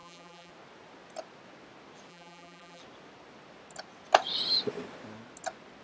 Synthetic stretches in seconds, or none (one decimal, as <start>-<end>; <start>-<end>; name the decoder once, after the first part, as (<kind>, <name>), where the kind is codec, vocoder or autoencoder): 0.0-0.5 (vocoder, BigVGAN v2); 2.1-2.8